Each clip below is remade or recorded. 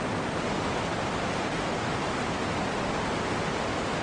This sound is recorded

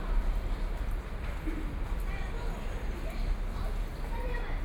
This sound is recorded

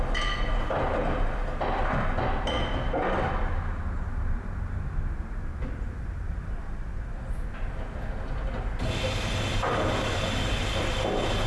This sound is recorded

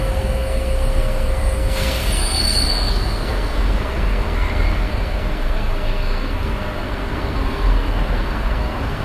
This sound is remade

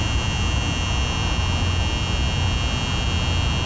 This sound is recorded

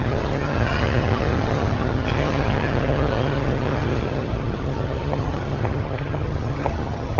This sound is remade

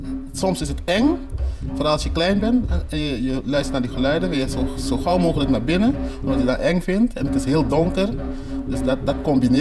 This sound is remade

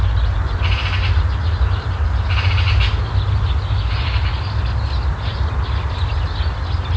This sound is recorded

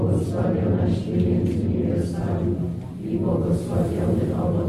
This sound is recorded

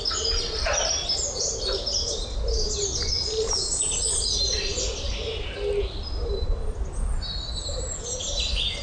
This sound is recorded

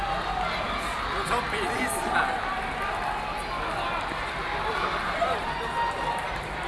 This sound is recorded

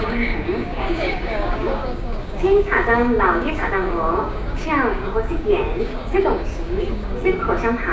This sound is remade